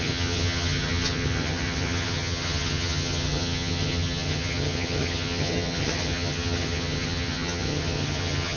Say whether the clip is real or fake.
fake